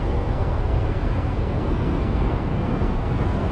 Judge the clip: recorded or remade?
remade